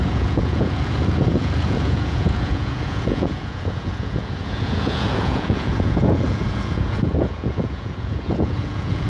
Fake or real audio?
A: fake